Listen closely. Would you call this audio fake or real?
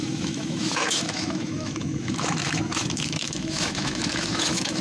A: fake